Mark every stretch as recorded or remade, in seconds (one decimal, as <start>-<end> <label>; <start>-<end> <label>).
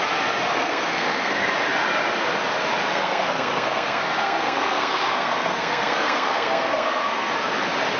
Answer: 0.0-0.5 recorded; 0.5-1.5 remade; 1.5-2.9 recorded; 2.9-7.3 remade; 7.3-8.0 recorded